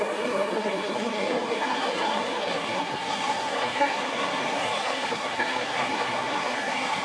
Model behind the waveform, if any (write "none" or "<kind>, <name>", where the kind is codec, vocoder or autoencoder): codec, SNAC